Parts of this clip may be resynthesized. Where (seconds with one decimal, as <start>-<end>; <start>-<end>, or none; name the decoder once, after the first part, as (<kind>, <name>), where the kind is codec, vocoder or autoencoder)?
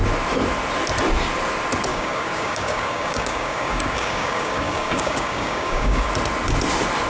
1.9-6.1 (codec, DAC)